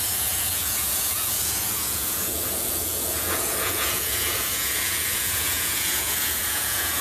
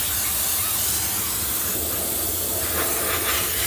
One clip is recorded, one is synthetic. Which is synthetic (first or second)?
first